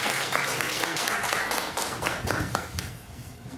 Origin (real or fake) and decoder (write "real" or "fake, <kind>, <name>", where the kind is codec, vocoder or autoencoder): fake, codec, SNAC